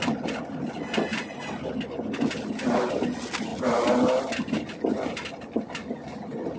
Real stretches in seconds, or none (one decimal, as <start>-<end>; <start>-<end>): 0.0-6.6